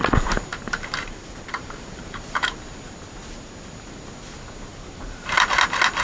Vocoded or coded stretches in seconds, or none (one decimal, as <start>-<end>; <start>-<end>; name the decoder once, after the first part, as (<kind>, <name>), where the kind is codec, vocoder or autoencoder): 0.5-2.6 (vocoder, BigVGAN v2); 4.7-5.5